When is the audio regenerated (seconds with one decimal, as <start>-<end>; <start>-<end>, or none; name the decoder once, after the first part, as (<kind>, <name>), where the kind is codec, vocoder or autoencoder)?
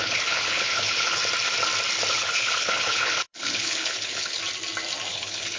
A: 0.0-1.2 (codec, HILCodec); 2.1-4.4; 5.1-5.6